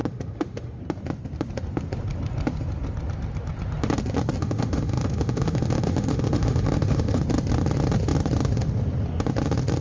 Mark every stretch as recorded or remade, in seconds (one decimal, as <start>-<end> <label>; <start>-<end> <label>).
0.0-0.8 remade; 0.8-4.4 recorded; 4.4-7.2 remade; 7.2-9.8 recorded